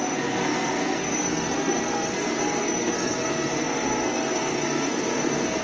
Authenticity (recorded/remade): remade